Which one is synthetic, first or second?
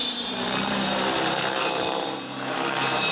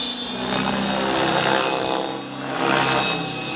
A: first